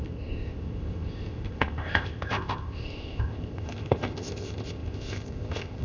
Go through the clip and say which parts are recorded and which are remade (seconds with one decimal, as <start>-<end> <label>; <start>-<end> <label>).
0.0-5.8 remade